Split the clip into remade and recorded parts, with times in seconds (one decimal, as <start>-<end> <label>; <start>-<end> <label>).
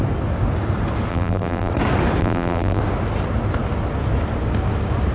0.0-1.1 recorded; 1.1-1.7 remade; 1.7-2.2 recorded; 2.2-2.8 remade; 2.8-5.1 recorded